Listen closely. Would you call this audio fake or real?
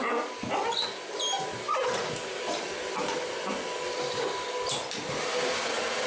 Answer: real